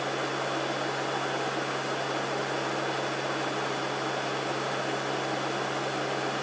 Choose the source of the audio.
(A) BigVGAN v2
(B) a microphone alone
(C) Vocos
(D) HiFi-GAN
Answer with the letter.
B